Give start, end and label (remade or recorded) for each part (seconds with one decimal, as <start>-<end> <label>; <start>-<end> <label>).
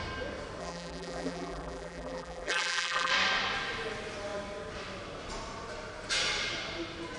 0.0-0.6 recorded; 0.6-3.1 remade; 3.1-7.2 recorded